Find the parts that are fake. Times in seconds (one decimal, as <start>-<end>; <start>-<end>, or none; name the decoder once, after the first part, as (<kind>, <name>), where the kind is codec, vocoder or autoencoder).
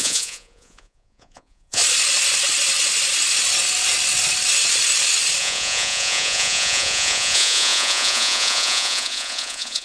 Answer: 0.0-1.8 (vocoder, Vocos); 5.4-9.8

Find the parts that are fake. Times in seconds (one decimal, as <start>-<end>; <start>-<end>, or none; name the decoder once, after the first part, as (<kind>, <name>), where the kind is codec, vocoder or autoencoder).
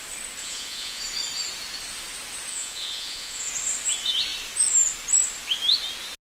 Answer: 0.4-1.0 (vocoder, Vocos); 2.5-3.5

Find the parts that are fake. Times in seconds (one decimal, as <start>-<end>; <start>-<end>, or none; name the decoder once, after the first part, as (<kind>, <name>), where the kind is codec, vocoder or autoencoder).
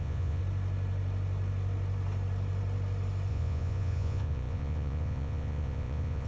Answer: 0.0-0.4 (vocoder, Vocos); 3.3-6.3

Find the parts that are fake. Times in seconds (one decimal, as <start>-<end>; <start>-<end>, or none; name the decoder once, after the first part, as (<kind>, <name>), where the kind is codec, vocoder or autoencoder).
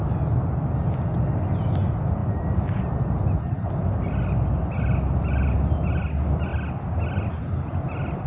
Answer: none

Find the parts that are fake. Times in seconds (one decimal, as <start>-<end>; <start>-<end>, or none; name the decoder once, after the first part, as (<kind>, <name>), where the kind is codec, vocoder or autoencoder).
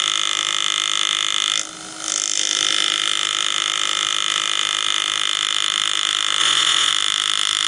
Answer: 6.4-6.9 (vocoder, Vocos)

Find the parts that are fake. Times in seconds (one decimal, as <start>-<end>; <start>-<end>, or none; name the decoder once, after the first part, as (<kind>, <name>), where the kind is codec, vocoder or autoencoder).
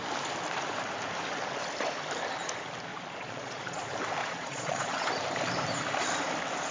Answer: 2.9-3.8 (vocoder, Vocos); 4.2-5.1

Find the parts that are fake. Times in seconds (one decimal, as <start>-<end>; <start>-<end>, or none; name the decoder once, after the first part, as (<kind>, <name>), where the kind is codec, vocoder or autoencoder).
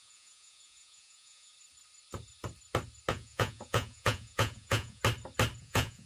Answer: 0.0-1.5 (vocoder, Vocos); 3.1-5.0; 5.6-6.1